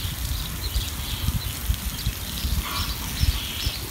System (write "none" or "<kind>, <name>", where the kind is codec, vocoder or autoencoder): none